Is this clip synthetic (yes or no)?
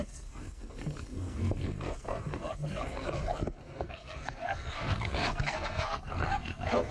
yes